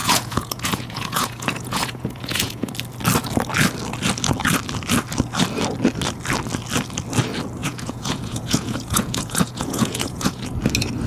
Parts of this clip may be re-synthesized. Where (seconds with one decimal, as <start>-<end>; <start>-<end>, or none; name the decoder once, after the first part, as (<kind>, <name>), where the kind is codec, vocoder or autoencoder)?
0.0-2.7 (vocoder, Vocos); 7.6-10.4